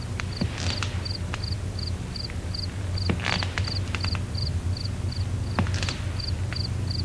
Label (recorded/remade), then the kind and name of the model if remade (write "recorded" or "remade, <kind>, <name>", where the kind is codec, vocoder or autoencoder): recorded